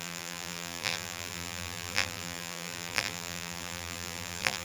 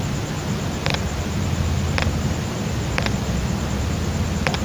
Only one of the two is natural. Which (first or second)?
second